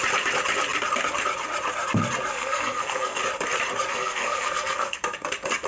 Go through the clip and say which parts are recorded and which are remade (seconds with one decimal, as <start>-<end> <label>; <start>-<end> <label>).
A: 0.0-2.3 recorded; 2.3-3.2 remade; 3.2-3.9 recorded; 3.9-5.0 remade; 5.0-5.7 recorded